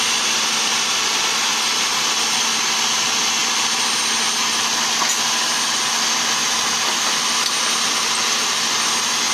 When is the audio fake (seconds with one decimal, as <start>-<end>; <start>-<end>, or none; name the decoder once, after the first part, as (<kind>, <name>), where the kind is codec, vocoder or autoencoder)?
none